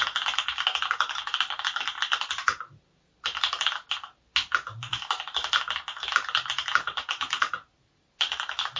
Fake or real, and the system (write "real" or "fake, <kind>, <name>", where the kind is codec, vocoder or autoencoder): real